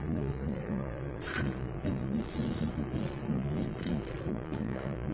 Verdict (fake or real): fake